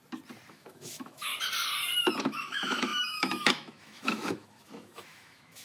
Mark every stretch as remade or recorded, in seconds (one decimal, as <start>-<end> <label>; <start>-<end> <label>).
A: 0.0-0.5 recorded; 0.5-1.3 remade; 1.3-2.2 recorded; 2.2-5.6 remade